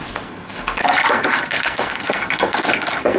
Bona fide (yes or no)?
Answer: no